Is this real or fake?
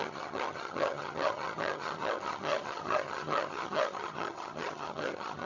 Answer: fake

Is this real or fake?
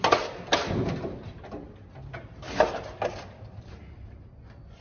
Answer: real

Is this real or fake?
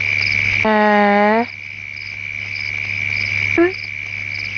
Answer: real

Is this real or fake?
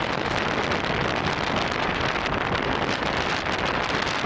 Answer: real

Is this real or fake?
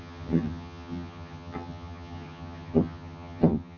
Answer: fake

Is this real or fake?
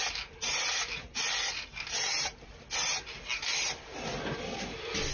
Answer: real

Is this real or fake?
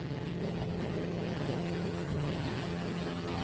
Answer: fake